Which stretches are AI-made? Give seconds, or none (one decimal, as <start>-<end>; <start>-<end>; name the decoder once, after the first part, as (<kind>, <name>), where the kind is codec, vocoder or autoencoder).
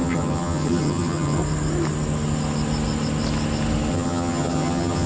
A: 0.0-1.4 (vocoder, HiFi-GAN); 3.9-5.1